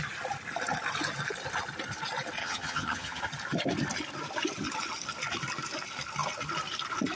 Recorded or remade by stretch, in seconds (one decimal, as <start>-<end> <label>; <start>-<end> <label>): 0.0-2.4 recorded; 2.4-3.2 remade; 3.2-7.2 recorded